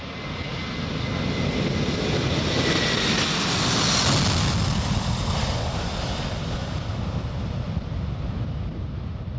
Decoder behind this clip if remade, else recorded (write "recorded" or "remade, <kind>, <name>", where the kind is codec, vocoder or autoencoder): recorded